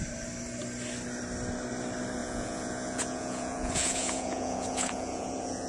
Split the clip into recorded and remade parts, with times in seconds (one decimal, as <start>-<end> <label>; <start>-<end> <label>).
0.0-2.2 recorded; 2.2-5.7 remade